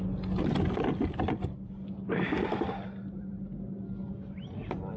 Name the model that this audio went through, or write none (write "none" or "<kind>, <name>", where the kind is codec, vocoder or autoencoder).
none